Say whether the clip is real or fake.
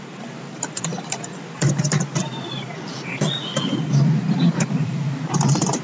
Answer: fake